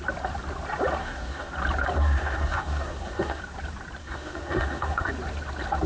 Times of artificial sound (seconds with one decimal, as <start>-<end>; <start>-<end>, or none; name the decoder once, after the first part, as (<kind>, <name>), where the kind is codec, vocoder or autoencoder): 1.0-1.5 (codec, SNAC); 2.0-3.4; 4.0-5.1